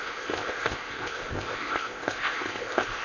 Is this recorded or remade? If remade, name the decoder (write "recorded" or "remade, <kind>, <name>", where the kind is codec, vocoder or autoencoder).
remade, codec, ZipCodec